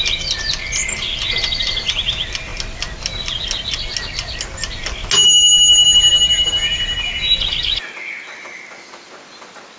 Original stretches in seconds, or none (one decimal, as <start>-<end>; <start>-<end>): 0.0-9.8